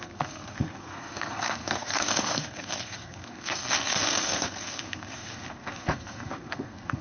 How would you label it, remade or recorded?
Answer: remade